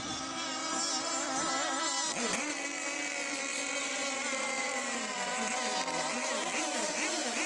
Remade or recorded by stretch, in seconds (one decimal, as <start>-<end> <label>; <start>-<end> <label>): 0.0-0.6 remade; 0.6-3.8 recorded; 3.8-5.7 remade; 5.7-6.6 recorded; 6.6-7.5 remade